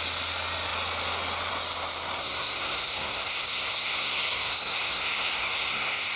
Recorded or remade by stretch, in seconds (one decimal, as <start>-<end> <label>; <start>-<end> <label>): 0.0-2.2 recorded; 2.2-6.2 remade